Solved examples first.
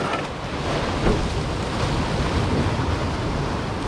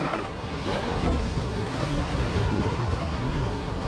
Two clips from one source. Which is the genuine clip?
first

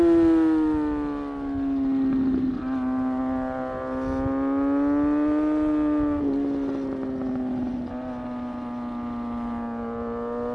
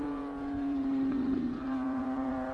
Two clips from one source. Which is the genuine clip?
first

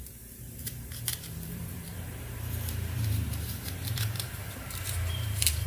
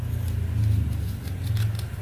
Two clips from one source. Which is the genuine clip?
second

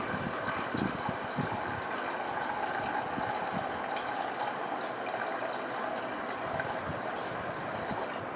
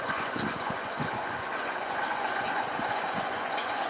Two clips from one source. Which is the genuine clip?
first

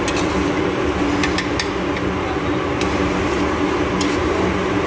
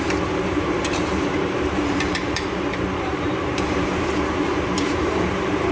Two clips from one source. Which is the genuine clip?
first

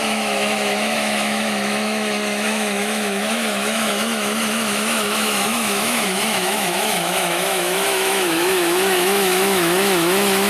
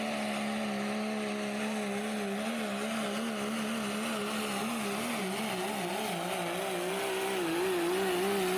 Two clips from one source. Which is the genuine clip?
second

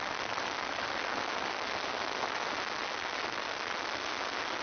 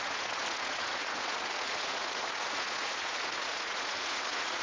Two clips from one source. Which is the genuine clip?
first